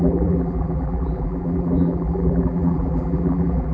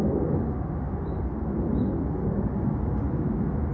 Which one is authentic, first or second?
second